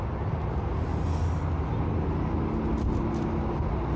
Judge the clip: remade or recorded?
recorded